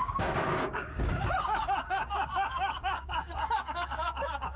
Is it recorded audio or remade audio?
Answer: remade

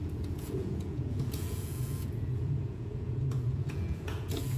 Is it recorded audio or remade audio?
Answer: remade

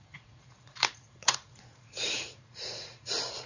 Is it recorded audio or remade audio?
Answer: remade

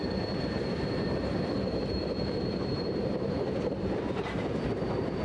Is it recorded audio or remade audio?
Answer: remade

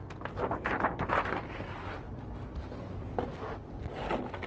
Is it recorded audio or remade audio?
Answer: recorded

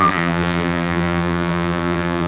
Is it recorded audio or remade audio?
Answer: remade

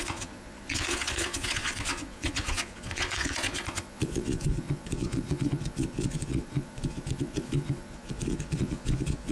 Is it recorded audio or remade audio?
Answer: remade